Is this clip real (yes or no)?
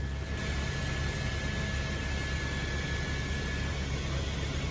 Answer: yes